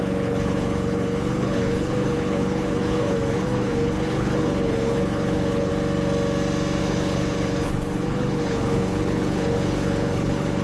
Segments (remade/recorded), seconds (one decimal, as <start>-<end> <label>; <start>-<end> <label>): 0.0-5.7 remade; 5.7-6.8 recorded; 6.8-10.6 remade